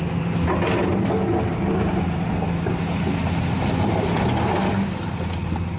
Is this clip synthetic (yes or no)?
no